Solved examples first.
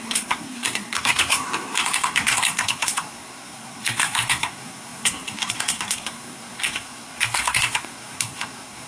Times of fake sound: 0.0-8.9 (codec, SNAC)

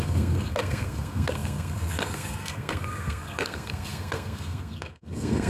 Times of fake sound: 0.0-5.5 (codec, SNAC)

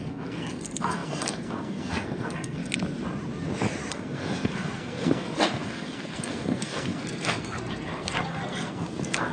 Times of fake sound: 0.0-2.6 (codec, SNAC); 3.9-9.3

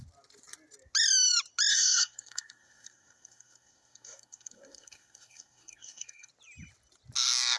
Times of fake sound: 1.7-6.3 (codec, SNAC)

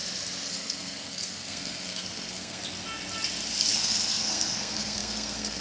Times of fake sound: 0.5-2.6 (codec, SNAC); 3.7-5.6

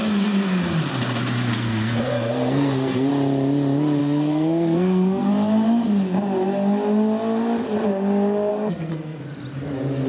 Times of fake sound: 1.5-3.1 (codec, SNAC); 4.0-5.3; 8.5-9.2

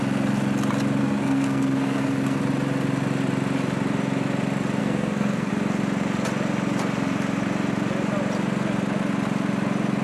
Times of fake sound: 1.0-2.4 (codec, SNAC); 4.8-5.5

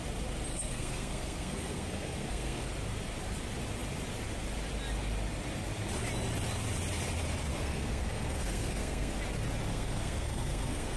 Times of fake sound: 0.5-2.7 (codec, SNAC); 7.5-9.1; 9.7-11.0